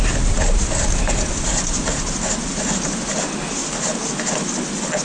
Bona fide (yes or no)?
yes